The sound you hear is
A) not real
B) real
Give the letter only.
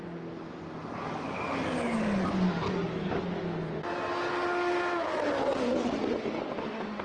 B